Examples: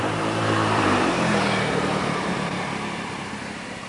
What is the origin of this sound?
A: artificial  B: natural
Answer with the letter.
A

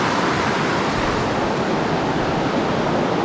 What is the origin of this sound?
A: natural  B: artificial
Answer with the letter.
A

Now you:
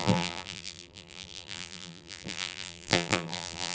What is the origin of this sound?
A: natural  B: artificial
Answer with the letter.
B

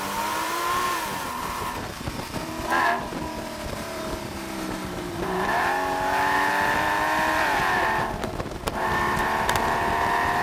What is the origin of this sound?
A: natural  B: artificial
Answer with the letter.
B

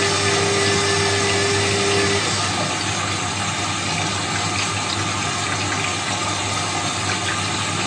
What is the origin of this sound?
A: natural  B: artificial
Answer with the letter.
A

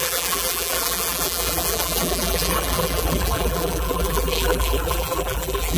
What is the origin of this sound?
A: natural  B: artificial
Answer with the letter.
B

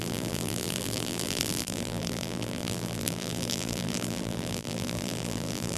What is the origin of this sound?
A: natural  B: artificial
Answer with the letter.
B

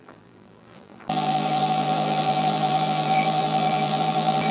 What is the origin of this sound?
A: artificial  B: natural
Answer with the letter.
A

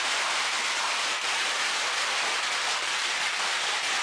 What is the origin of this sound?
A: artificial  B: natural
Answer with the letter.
A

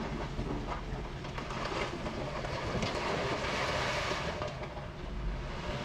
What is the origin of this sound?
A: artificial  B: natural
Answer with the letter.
B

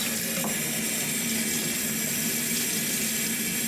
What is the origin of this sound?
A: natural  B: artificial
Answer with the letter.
A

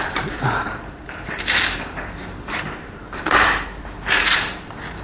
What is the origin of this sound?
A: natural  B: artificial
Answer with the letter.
B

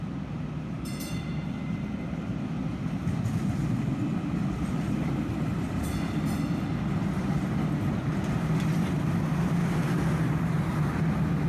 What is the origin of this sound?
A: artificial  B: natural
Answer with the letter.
B